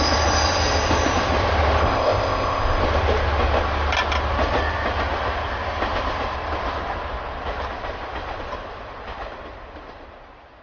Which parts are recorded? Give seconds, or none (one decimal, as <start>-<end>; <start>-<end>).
0.0-1.8; 2.8-10.6